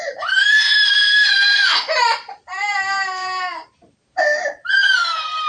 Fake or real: fake